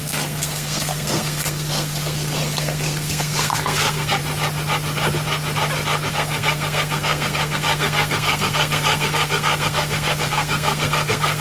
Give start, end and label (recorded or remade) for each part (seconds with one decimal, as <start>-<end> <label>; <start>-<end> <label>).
0.0-4.2 remade; 4.2-6.1 recorded; 6.1-11.4 remade